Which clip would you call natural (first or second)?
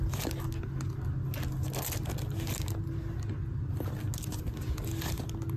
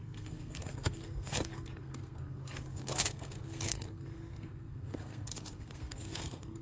first